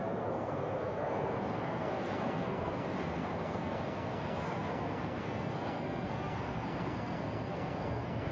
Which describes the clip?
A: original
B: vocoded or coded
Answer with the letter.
B